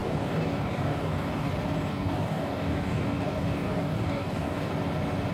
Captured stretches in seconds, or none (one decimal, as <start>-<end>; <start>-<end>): 1.5-1.9; 4.7-5.3

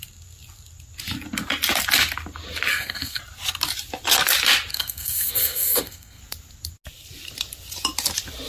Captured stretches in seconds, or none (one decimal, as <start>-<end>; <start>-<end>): 0.0-2.7; 3.2-4.7; 6.2-8.5

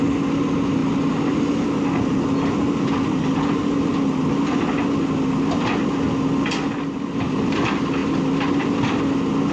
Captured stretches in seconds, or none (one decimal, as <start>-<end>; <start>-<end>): 0.0-9.5

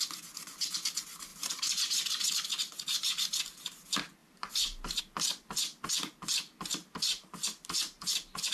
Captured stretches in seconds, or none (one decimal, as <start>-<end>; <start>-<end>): 0.0-1.3; 2.3-4.2; 5.0-8.5

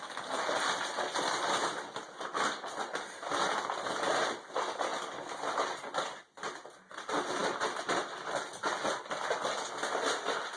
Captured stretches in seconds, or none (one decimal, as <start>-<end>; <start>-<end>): 0.0-10.6

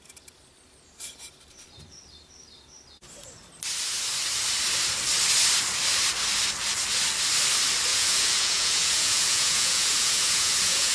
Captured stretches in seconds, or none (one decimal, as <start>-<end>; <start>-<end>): 0.0-7.9

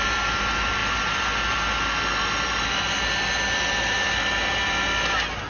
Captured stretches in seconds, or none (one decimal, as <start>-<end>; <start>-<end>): 0.0-5.5

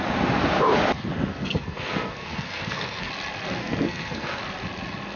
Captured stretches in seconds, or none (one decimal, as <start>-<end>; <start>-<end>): 0.0-1.3; 3.1-3.6; 4.4-5.2